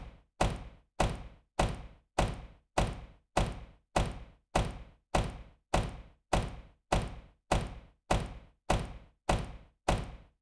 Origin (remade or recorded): recorded